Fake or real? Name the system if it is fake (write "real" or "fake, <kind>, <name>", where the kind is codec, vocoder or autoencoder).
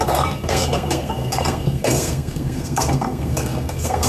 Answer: fake, codec, SNAC